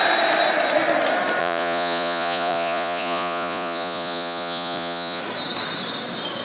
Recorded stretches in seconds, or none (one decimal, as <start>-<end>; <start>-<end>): 0.0-1.4; 5.2-6.4